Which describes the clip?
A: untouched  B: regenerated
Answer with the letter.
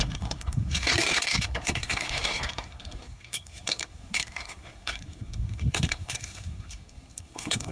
B